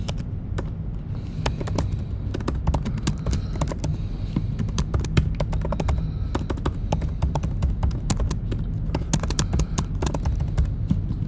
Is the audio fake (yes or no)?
no